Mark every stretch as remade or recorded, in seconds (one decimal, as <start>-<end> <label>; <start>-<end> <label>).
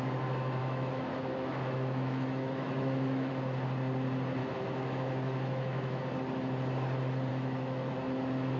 0.0-0.6 recorded; 0.6-3.3 remade; 3.3-4.4 recorded; 4.4-6.0 remade; 6.0-7.3 recorded; 7.3-7.9 remade; 7.9-8.6 recorded